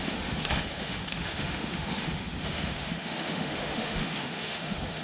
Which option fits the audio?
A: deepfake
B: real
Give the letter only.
A